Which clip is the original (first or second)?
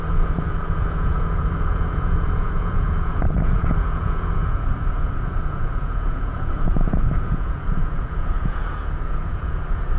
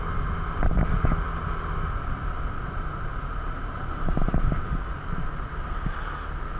second